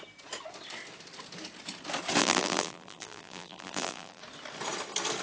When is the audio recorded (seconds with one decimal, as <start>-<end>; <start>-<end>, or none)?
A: 0.0-2.2; 4.2-5.2